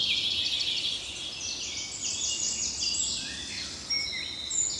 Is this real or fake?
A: real